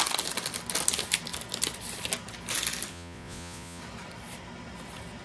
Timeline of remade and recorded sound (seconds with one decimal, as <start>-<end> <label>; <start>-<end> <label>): 0.0-2.9 recorded; 2.9-3.8 remade; 3.8-5.2 recorded